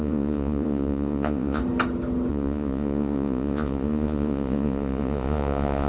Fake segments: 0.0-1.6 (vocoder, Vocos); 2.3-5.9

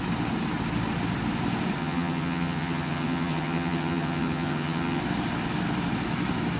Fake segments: 1.8-5.0 (vocoder, HiFi-GAN)

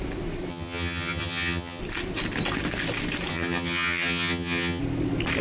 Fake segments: 0.5-1.8 (vocoder, HiFi-GAN); 3.3-4.8

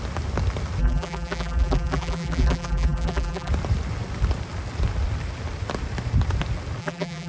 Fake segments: 0.8-3.5 (vocoder, BigVGAN v2); 6.8-7.3